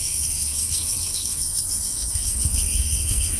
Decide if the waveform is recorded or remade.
remade